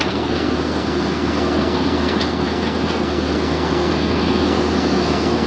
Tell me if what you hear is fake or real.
fake